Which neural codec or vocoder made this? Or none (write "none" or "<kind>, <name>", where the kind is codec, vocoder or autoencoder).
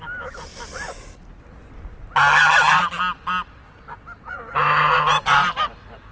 none